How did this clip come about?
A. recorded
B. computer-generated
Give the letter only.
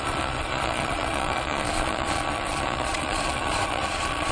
B